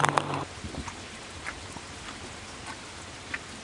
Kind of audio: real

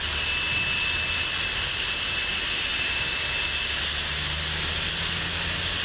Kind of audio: real